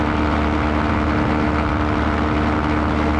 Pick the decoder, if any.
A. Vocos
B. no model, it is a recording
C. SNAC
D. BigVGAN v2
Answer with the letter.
B